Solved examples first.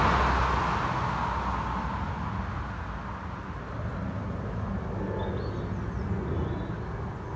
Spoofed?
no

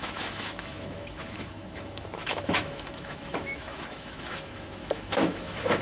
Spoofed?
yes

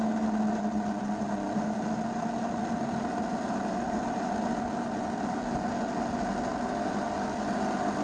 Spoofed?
no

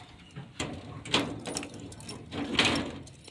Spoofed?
no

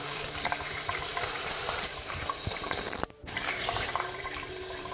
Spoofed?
yes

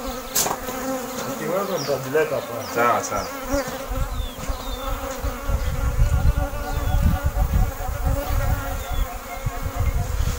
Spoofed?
no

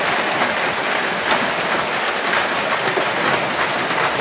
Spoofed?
no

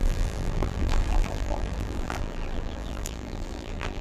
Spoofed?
yes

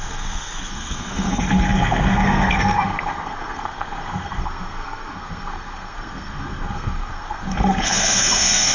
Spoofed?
yes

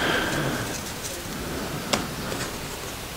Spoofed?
no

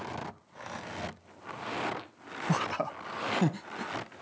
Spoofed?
no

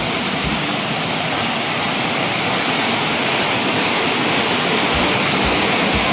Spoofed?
no